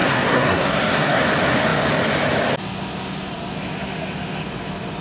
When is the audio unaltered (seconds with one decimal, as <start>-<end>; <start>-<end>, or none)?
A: 1.2-5.0